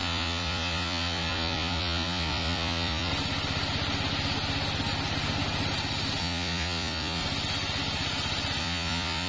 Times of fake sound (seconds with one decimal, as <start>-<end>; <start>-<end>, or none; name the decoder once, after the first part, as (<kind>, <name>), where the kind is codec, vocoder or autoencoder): 0.0-3.1 (vocoder, Vocos); 6.2-7.2; 8.6-9.3